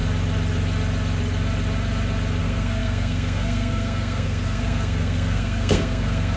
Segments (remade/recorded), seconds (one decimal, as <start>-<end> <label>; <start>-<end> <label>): 0.0-2.4 recorded; 2.4-6.4 remade